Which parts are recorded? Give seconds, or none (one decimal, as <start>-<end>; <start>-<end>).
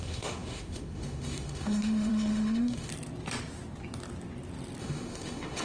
2.9-4.8